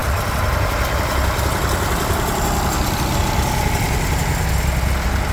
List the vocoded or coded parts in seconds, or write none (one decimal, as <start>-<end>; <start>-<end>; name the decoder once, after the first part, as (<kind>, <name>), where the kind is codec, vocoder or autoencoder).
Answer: 0.0-3.2 (vocoder, BigVGAN v2)

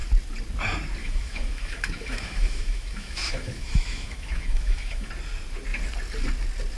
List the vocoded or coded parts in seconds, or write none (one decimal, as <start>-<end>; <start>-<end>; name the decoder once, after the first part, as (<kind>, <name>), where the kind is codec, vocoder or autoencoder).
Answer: 1.0-5.1 (autoencoder, DAC-VAE)

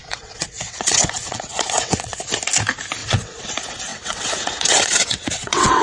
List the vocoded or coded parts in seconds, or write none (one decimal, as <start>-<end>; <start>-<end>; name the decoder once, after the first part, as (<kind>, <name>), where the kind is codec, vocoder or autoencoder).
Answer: 0.0-2.2 (vocoder, WaveNeXt); 3.0-3.5; 3.9-5.8

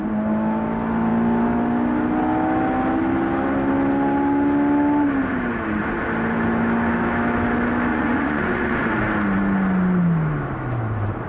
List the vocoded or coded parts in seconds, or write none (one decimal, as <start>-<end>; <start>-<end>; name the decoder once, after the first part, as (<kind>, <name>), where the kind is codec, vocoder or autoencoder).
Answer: 7.9-8.8 (vocoder, Vocos)

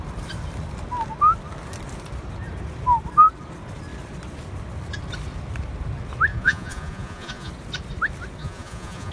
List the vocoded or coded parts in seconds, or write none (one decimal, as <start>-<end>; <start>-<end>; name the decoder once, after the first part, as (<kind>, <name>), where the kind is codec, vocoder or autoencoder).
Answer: 6.3-7.5 (vocoder, Vocos); 8.4-9.1